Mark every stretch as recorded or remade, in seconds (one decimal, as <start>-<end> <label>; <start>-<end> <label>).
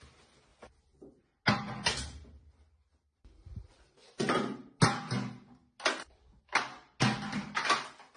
0.0-2.9 recorded; 2.9-4.8 remade; 4.8-8.2 recorded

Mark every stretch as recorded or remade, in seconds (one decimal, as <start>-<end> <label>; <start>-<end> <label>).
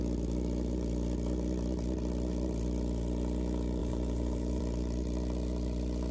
0.0-3.8 recorded; 3.8-4.6 remade; 4.6-6.1 recorded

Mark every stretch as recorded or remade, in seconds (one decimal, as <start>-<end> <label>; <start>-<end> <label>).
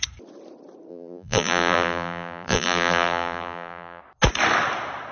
0.0-0.9 recorded; 0.9-4.0 remade; 4.0-5.1 recorded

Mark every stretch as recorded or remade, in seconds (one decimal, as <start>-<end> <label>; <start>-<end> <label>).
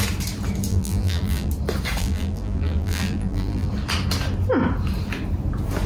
0.0-0.7 recorded; 0.7-1.5 remade; 1.5-2.0 recorded; 2.0-3.7 remade; 3.7-5.9 recorded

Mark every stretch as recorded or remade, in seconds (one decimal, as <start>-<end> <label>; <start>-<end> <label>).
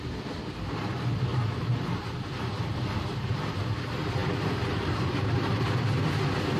0.0-1.3 recorded; 1.3-3.3 remade; 3.3-4.2 recorded; 4.2-6.0 remade; 6.0-6.6 recorded